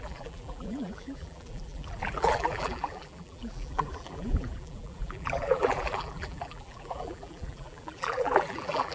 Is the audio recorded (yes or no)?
no